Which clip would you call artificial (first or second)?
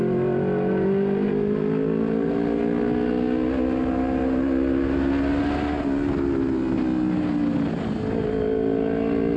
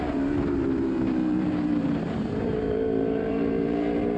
second